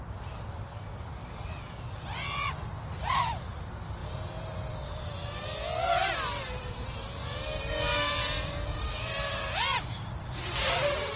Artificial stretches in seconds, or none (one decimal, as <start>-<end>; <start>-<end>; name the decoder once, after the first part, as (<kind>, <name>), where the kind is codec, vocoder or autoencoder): 6.0-6.6 (vocoder, BigVGAN v2)